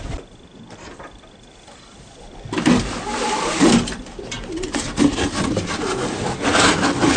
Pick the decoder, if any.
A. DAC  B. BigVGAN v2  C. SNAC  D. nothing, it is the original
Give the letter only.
B